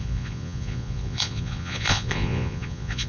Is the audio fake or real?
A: fake